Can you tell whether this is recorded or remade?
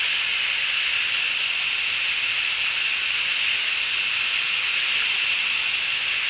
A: recorded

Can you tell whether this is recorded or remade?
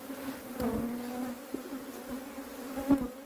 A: recorded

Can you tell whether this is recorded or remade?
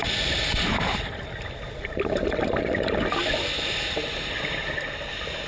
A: recorded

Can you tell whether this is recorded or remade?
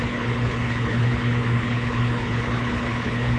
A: remade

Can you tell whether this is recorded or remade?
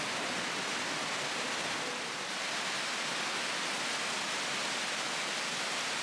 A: recorded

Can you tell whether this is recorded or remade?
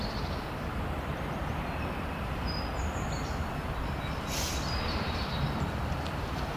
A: remade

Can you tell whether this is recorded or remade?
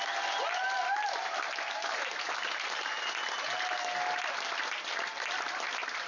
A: recorded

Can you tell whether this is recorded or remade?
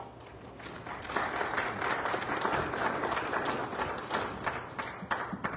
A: recorded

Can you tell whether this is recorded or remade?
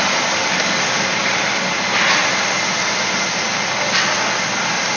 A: recorded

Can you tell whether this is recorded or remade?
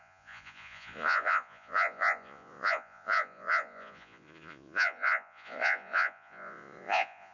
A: remade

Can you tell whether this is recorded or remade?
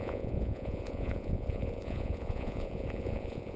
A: remade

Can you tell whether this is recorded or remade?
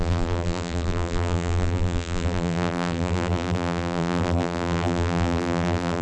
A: remade